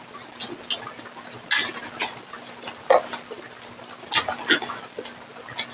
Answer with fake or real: real